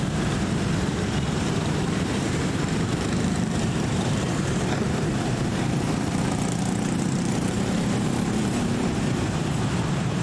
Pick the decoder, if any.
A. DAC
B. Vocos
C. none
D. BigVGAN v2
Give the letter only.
D